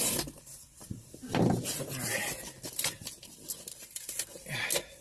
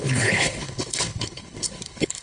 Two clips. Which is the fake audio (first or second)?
second